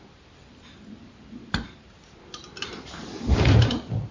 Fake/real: fake